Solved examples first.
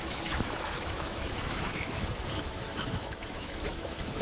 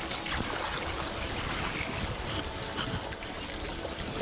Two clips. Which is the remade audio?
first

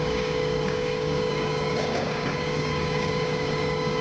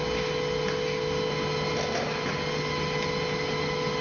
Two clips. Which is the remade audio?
first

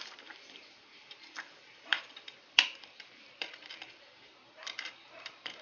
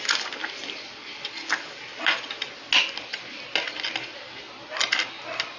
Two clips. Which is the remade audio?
first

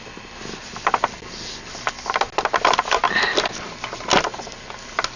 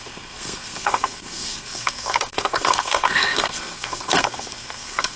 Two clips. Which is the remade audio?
second